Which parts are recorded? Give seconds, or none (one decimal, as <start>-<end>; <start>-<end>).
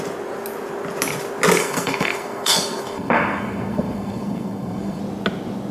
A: 0.0-1.6; 5.0-5.7